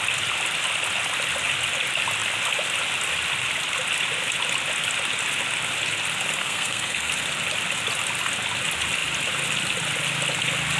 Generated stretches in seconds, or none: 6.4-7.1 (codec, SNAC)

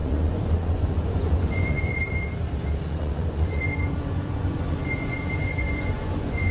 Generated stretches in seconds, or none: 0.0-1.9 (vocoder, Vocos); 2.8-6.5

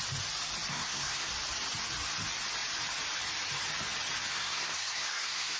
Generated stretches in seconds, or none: 0.7-1.3 (codec, SNAC); 4.3-5.6